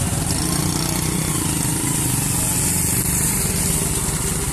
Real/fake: real